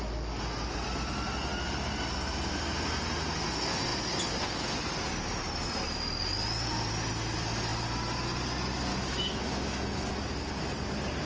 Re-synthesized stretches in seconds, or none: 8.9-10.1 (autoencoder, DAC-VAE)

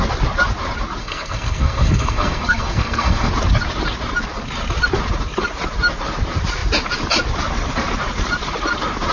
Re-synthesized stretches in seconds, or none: 1.0-3.3 (codec, SNAC)

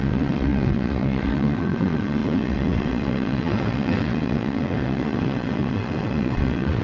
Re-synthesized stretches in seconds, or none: 0.0-6.8 (vocoder, WaveNeXt)